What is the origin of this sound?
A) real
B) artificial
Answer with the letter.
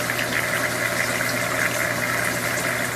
A